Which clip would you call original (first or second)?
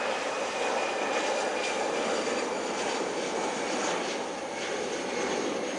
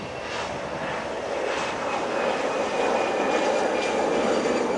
second